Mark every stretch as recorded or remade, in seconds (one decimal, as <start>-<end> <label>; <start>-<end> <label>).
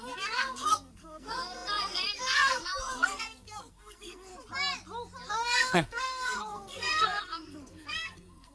0.0-4.3 remade; 4.3-5.3 recorded; 5.3-8.5 remade